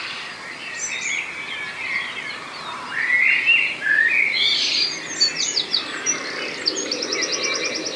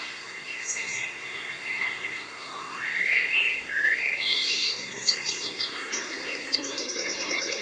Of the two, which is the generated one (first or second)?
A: second